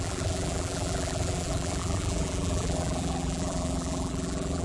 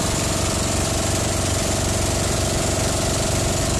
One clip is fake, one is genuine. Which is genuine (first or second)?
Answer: second